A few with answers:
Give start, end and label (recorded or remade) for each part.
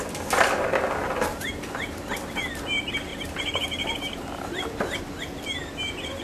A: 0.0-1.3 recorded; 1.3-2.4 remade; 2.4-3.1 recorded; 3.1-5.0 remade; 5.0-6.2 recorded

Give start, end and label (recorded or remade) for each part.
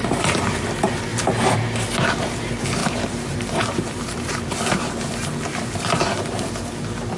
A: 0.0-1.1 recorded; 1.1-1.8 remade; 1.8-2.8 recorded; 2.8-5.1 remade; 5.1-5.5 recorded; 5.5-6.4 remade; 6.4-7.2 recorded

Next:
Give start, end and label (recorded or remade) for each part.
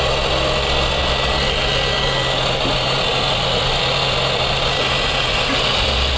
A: 0.0-6.2 recorded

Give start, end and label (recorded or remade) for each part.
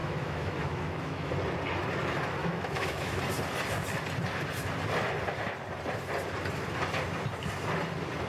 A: 0.0-1.3 remade; 1.3-2.4 recorded; 2.4-3.2 remade; 3.2-8.3 recorded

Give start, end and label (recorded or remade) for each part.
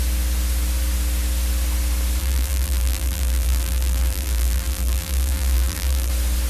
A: 0.0-2.2 recorded; 2.2-6.1 remade; 6.1-6.5 recorded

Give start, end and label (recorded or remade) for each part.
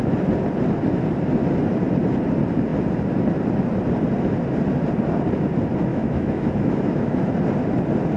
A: 0.0-5.9 recorded; 5.9-7.2 remade; 7.2-8.2 recorded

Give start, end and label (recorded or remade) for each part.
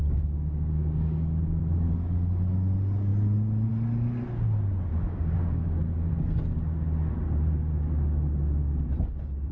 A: 0.0-1.6 remade; 1.6-4.9 recorded; 4.9-6.1 remade; 6.1-9.5 recorded